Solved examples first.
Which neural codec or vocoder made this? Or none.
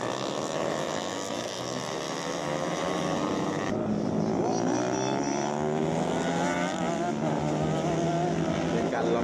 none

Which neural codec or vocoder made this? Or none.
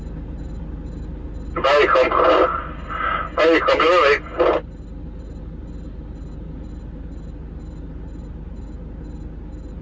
none